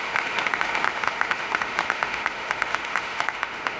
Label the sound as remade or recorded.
remade